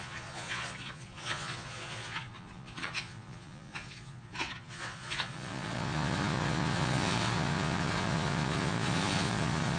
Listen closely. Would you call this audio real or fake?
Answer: fake